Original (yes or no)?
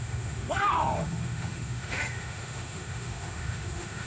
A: no